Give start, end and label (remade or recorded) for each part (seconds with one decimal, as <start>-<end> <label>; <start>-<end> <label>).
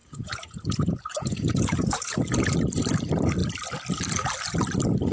0.0-2.2 remade; 2.2-5.1 recorded